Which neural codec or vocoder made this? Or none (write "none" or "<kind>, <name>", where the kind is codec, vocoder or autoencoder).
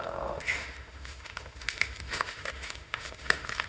autoencoder, DAC-VAE